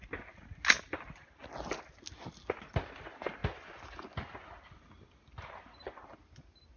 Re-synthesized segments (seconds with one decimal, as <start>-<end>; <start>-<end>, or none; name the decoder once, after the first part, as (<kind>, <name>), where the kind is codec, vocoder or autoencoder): none